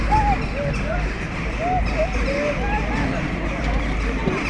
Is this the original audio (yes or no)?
yes